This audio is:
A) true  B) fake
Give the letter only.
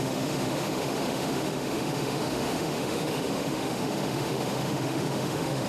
B